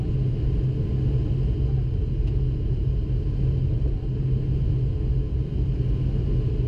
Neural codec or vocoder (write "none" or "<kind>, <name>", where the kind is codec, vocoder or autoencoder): none